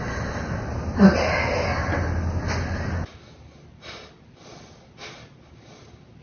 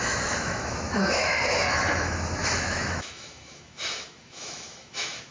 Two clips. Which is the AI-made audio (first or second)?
second